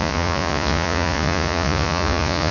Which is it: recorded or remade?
remade